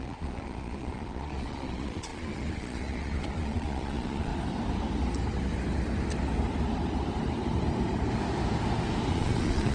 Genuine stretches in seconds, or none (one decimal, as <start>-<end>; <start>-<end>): 4.3-9.1